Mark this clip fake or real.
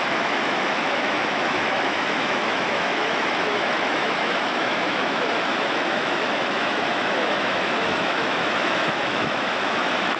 fake